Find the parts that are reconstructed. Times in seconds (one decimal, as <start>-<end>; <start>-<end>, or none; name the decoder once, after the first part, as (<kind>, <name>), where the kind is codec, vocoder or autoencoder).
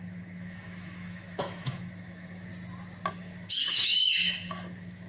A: 0.0-2.5 (autoencoder, DAC-VAE); 3.1-5.1